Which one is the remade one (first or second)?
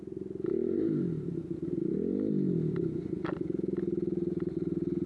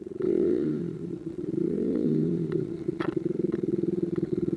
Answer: second